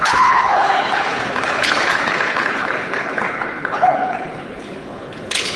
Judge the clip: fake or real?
fake